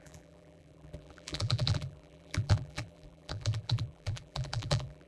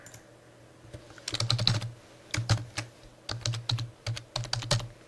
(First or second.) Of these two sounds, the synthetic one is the first